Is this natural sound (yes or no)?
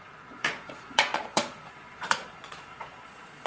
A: no